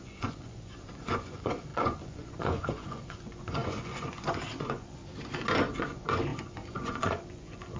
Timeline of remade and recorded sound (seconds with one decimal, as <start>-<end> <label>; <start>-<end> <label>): 0.0-5.0 remade; 5.0-5.7 recorded; 5.7-7.8 remade